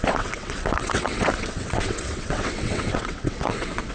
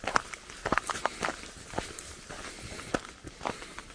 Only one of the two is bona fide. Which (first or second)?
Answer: second